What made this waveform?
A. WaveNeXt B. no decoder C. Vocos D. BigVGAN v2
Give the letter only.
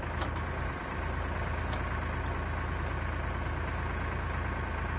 B